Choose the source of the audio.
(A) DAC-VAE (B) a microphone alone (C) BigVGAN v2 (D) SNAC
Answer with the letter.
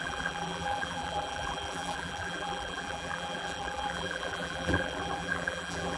C